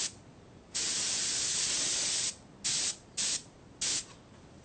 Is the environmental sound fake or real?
real